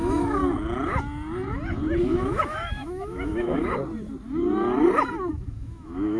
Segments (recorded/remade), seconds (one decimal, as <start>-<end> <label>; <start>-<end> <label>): 0.0-0.4 remade; 0.4-2.0 recorded; 2.0-3.8 remade; 3.8-5.3 recorded; 5.3-6.2 remade